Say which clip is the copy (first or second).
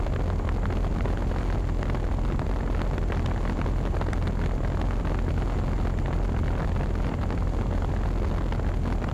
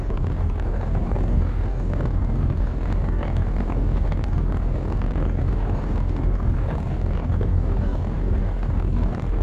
second